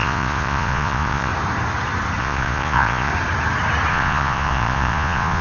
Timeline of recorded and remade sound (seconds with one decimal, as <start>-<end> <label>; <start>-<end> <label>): 0.0-1.3 remade; 1.3-2.2 recorded; 2.2-3.1 remade; 3.1-3.9 recorded; 3.9-5.4 remade